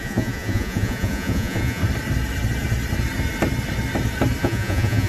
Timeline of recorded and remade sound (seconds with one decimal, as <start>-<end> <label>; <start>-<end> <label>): 0.0-1.8 remade; 1.8-4.4 recorded; 4.4-5.1 remade